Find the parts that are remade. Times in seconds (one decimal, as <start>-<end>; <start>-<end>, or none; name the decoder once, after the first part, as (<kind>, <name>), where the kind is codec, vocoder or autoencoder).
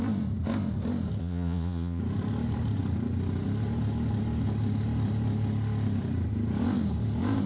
1.2-2.0 (vocoder, Vocos)